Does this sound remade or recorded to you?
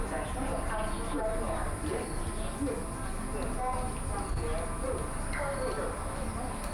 recorded